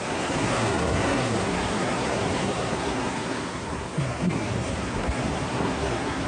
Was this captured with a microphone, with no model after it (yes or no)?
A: no